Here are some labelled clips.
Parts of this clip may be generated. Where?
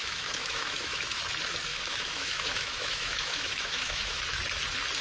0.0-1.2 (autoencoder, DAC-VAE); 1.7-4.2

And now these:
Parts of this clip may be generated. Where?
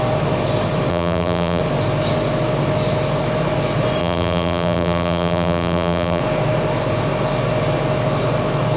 0.9-1.6 (vocoder, BigVGAN v2); 4.0-6.2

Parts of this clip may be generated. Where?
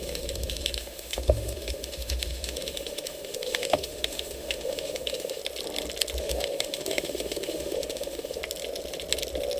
0.0-5.4 (autoencoder, DAC-VAE); 6.2-8.4